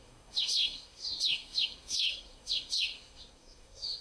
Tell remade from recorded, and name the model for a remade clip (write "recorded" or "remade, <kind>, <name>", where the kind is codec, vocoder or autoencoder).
remade, codec, SNAC